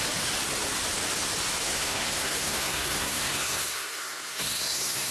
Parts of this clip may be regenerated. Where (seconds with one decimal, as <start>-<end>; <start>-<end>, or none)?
1.6-5.1